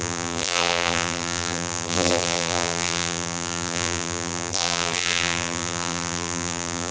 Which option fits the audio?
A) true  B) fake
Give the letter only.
B